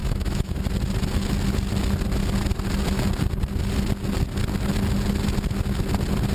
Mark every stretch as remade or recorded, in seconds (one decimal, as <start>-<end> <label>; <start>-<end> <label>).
0.0-0.6 remade; 0.6-6.3 recorded